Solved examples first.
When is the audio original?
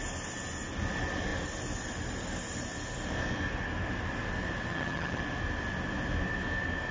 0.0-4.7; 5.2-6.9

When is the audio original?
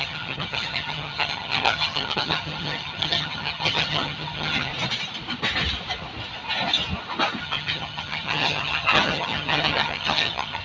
4.7-7.4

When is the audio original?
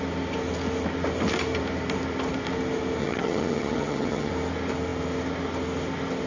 0.0-3.0; 4.3-6.3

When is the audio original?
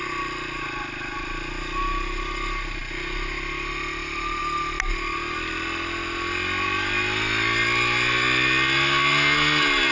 0.0-9.9